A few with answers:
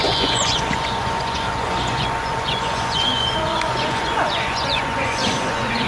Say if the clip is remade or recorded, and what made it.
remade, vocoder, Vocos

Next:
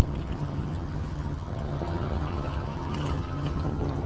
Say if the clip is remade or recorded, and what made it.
remade, vocoder, HiFi-GAN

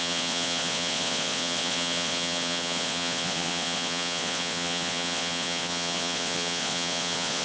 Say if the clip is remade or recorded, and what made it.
remade, vocoder, Vocos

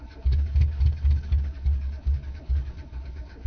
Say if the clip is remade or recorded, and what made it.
remade, codec, DAC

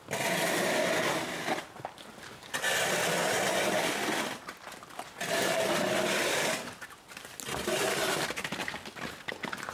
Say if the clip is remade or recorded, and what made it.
recorded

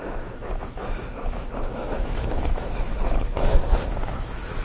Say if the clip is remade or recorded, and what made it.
remade, autoencoder, DAC-VAE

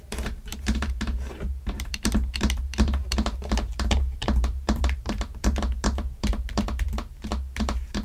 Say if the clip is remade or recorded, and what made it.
remade, vocoder, BigVGAN v2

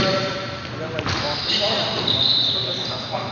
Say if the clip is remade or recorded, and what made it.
recorded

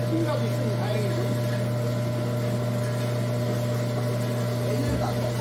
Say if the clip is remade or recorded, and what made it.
recorded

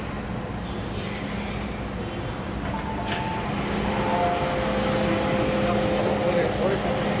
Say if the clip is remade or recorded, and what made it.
recorded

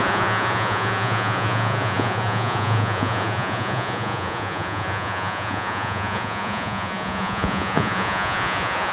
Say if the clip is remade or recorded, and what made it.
remade, vocoder, Vocos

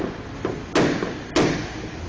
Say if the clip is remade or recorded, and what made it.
recorded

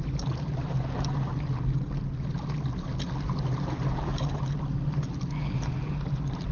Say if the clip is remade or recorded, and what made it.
recorded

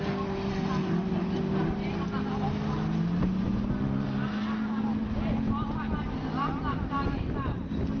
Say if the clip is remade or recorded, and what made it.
recorded